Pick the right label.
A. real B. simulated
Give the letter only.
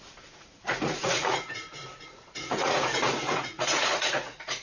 B